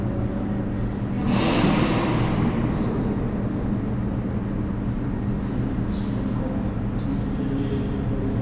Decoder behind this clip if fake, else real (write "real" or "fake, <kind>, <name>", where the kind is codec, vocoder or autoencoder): real